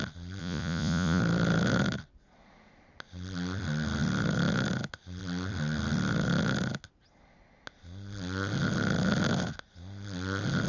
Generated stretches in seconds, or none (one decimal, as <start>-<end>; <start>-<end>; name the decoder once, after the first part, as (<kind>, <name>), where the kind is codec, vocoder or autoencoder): 0.4-1.2 (vocoder, Vocos)